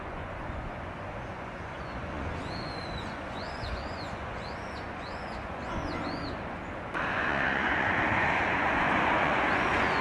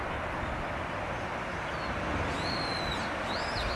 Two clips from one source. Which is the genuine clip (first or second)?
second